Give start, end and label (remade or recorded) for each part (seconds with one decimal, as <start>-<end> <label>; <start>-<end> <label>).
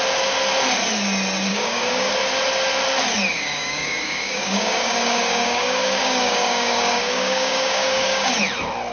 0.0-1.5 recorded; 1.5-2.1 remade; 2.1-3.3 recorded; 3.3-8.3 remade; 8.3-8.9 recorded